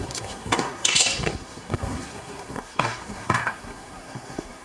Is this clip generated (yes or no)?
yes